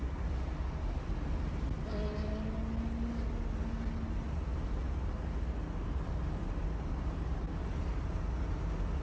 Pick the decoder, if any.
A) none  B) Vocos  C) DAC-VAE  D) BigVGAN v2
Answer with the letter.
A